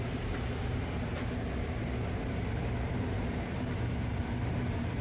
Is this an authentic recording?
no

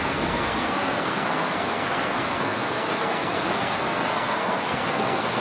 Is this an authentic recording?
no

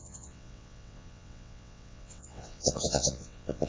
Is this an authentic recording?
no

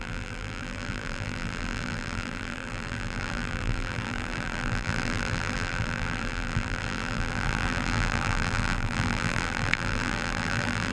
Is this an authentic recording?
no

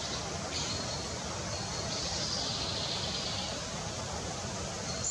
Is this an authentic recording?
yes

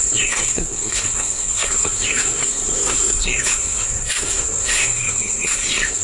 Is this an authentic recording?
no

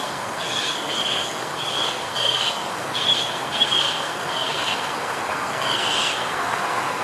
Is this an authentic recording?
no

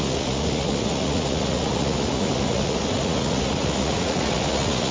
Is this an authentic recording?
no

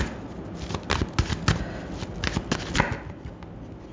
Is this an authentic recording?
yes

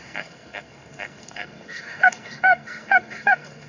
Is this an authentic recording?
no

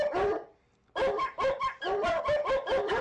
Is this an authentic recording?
yes